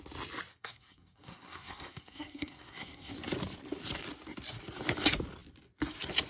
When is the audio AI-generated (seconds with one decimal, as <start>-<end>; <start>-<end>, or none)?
0.5-3.1